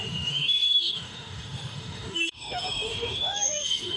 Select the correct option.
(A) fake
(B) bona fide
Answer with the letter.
A